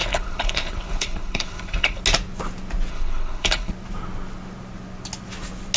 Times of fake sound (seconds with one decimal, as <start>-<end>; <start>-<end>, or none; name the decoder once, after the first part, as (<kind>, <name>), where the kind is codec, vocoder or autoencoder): 0.0-2.0 (codec, HILCodec); 2.9-3.7